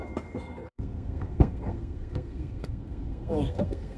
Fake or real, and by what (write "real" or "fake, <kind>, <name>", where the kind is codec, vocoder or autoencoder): fake, codec, SNAC